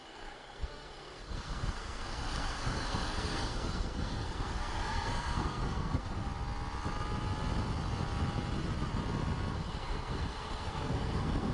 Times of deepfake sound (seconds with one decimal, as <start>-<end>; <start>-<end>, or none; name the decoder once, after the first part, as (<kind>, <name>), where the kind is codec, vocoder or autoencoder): 0.0-6.3 (codec, SNAC); 9.5-11.5